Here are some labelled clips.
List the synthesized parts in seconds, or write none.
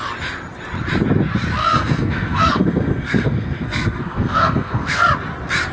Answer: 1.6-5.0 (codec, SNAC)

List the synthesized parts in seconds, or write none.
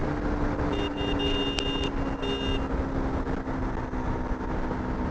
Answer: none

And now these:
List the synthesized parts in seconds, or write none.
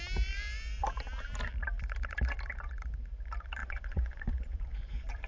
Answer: 3.6-5.3 (vocoder, Vocos)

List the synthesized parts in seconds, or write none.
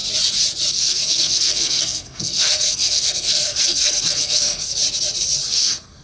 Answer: 0.7-4.8 (codec, SNAC); 5.5-6.0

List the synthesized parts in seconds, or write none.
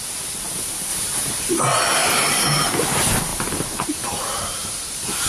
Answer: 0.9-1.6 (vocoder, BigVGAN v2); 2.0-2.7; 3.3-5.3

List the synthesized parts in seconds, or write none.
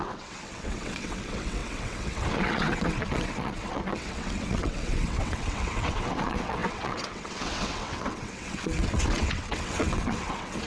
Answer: 0.0-10.7 (vocoder, WaveNeXt)